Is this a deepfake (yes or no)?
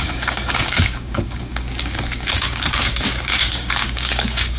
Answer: yes